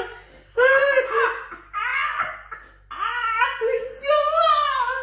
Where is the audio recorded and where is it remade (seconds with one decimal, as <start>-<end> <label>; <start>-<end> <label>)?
0.0-5.0 recorded